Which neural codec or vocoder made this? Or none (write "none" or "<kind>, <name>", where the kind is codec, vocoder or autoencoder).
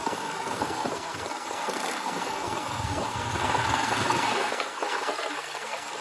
codec, SNAC